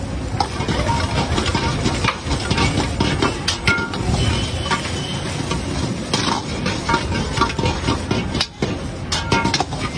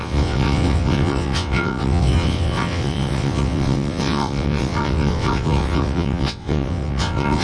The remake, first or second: second